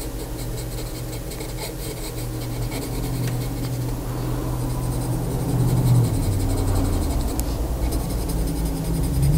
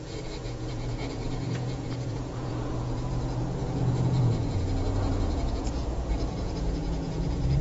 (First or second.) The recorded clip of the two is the first